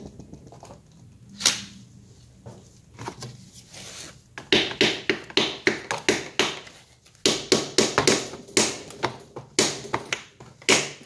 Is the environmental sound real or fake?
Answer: real